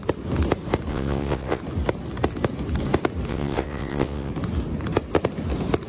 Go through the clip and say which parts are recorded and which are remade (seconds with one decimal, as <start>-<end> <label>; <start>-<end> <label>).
0.0-0.9 recorded; 0.9-1.6 remade; 1.6-3.3 recorded; 3.3-4.3 remade; 4.3-5.9 recorded